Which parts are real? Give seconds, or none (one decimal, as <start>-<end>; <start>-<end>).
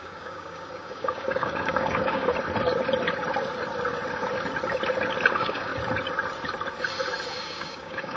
2.3-5.3; 5.7-7.3